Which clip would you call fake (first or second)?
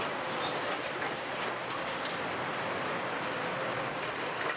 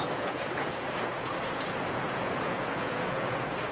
second